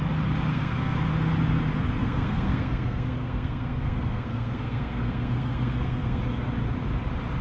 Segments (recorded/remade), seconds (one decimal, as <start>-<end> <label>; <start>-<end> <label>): 0.0-0.5 recorded; 0.5-1.0 remade; 1.0-2.0 recorded; 2.0-6.2 remade; 6.2-7.4 recorded